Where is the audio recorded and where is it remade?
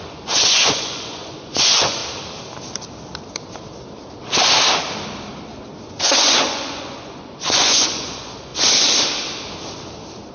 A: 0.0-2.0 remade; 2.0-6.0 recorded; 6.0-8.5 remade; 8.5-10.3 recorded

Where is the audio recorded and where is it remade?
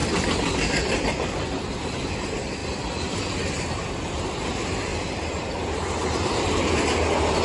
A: 0.0-2.1 remade; 2.1-2.6 recorded; 2.6-3.6 remade; 3.6-4.9 recorded; 4.9-6.7 remade; 6.7-7.4 recorded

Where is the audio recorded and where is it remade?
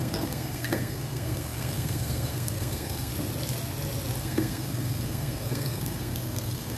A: 0.0-3.1 remade; 3.1-4.2 recorded; 4.2-6.8 remade